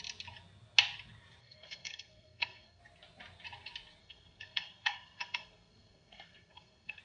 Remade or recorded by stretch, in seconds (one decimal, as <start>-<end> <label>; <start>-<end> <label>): 0.0-1.4 recorded; 1.4-2.8 remade; 2.8-4.0 recorded; 4.0-7.0 remade